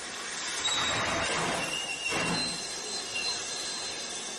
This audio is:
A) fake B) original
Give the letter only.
B